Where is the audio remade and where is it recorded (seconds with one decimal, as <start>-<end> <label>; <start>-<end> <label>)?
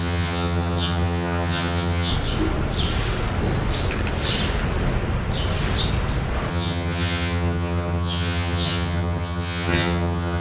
0.0-2.1 remade; 2.1-6.5 recorded; 6.5-10.4 remade